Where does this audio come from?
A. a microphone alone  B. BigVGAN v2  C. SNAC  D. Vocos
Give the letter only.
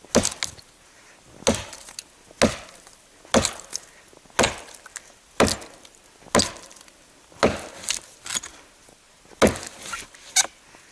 A